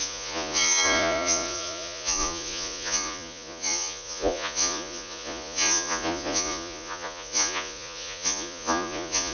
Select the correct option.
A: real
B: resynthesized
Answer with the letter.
B